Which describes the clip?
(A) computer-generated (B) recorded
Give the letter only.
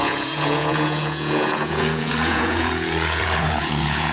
A